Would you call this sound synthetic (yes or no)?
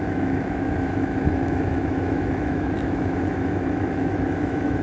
yes